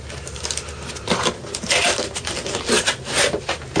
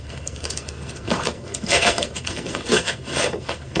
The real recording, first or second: first